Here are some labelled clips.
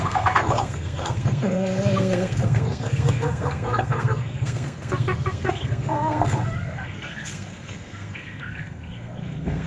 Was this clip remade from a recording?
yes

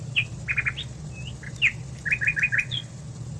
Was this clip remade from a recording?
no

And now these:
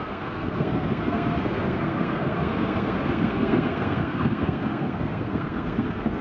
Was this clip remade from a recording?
yes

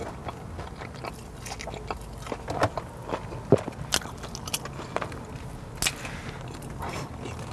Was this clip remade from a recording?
no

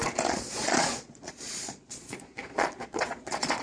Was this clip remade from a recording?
yes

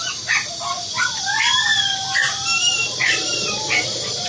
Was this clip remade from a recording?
no